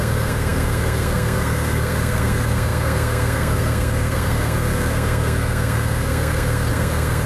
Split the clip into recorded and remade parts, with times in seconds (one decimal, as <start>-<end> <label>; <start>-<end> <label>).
0.0-7.3 remade